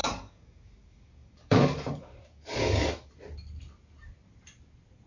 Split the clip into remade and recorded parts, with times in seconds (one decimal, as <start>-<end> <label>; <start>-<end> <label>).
0.0-3.1 remade; 3.1-5.1 recorded